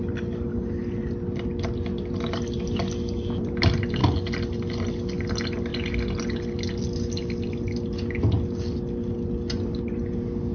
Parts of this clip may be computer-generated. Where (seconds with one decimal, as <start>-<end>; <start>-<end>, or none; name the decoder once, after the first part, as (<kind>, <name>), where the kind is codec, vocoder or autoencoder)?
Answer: none